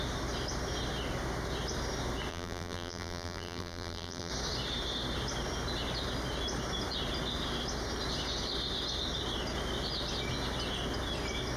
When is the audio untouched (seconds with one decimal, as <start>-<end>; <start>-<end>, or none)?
0.0-2.3; 4.3-11.6